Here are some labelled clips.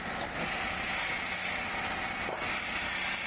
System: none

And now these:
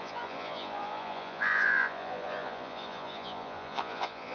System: vocoder, Vocos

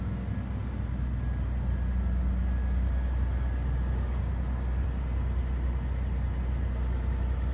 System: none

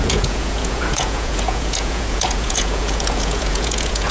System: vocoder, Vocos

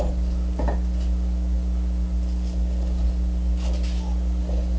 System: none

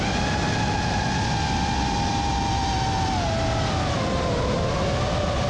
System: none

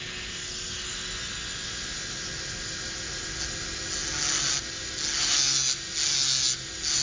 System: none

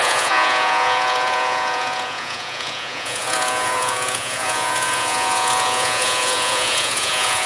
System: vocoder, Vocos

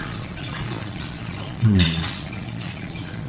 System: vocoder, Vocos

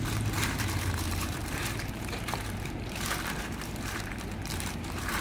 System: vocoder, BigVGAN v2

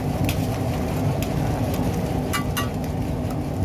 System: none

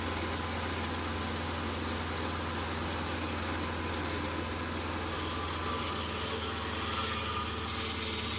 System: none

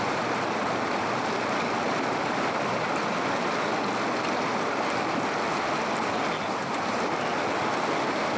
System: none